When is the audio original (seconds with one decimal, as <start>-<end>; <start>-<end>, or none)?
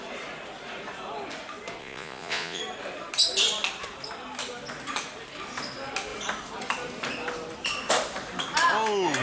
0.0-1.8; 2.6-9.2